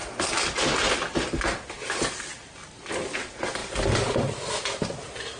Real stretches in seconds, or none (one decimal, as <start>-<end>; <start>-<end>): 0.0-3.6